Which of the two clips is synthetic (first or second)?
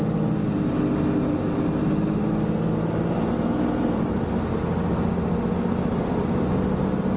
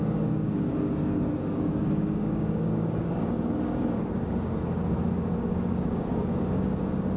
second